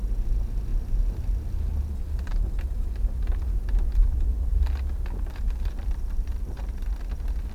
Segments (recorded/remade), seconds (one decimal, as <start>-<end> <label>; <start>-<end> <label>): 0.0-0.7 recorded; 0.7-2.4 remade; 2.4-4.5 recorded; 4.5-6.8 remade; 6.8-7.5 recorded